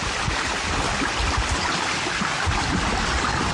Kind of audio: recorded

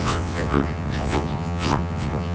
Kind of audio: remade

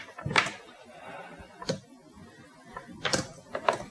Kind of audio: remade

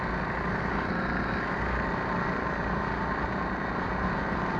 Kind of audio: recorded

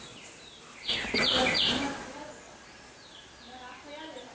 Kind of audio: recorded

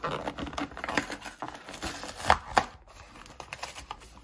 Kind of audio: recorded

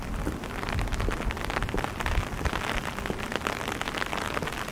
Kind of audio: recorded